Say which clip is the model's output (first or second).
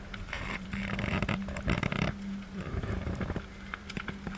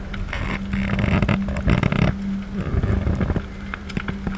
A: first